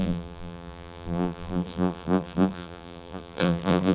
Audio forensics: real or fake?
fake